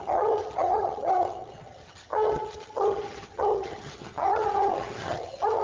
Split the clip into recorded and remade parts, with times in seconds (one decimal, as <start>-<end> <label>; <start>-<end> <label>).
0.0-5.6 remade

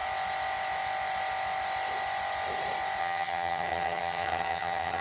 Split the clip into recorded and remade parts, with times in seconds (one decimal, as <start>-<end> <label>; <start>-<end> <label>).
0.0-3.0 recorded; 3.0-5.0 remade

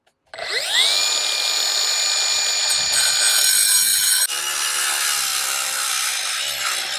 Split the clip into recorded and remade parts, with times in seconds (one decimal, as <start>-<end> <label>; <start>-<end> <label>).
0.0-3.9 recorded; 3.9-4.4 remade; 4.4-5.3 recorded; 5.3-6.1 remade; 6.1-7.0 recorded

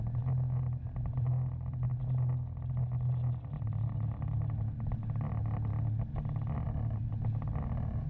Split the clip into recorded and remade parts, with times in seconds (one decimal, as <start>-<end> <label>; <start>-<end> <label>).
0.0-8.1 recorded

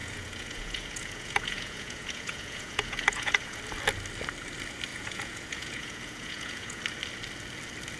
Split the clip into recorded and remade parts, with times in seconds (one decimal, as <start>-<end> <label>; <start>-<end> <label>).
0.0-3.6 remade; 3.6-4.9 recorded; 4.9-6.8 remade; 6.8-8.0 recorded

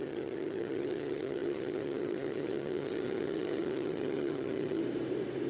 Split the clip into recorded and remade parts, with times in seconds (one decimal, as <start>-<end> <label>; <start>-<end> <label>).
0.0-4.8 remade; 4.8-5.5 recorded

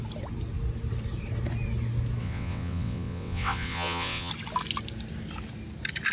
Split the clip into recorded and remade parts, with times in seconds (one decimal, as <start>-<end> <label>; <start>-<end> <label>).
0.0-2.2 recorded; 2.2-4.3 remade; 4.3-6.1 recorded